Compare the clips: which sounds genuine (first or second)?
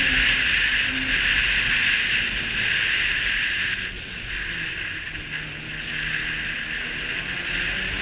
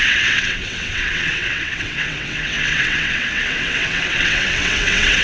first